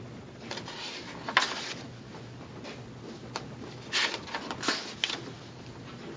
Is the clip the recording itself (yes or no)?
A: yes